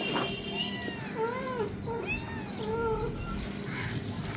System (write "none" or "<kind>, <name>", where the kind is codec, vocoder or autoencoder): none